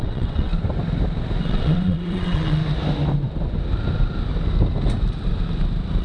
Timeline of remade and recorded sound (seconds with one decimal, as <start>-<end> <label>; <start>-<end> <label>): 0.0-0.5 remade; 0.5-1.4 recorded; 1.4-2.6 remade; 2.6-6.0 recorded

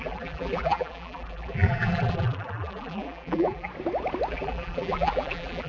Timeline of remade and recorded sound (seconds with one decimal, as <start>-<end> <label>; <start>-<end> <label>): 0.0-3.7 remade; 3.7-4.3 recorded; 4.3-5.7 remade